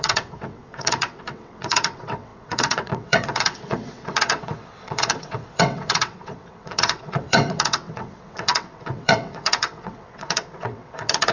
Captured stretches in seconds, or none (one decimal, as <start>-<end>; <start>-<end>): none